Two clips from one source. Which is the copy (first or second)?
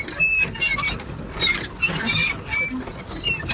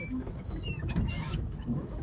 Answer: second